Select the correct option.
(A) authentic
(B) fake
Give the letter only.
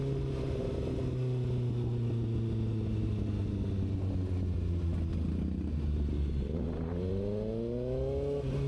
A